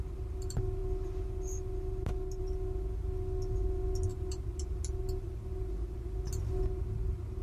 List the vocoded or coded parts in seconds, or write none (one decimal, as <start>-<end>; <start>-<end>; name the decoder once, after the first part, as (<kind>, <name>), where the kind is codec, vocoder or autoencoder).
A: none